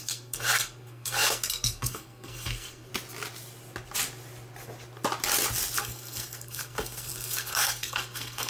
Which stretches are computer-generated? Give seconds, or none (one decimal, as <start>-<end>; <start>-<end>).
0.0-2.9; 5.8-8.5